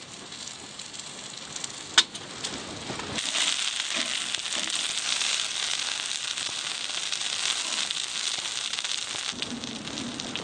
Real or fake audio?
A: real